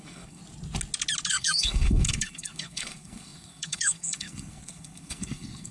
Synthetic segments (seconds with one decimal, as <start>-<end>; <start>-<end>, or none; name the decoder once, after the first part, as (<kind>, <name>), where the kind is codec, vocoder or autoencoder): 0.0-0.4 (codec, SNAC); 1.3-5.7